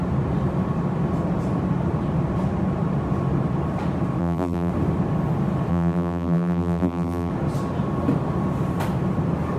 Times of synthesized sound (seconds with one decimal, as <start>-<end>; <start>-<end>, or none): 4.2-4.7; 5.7-7.3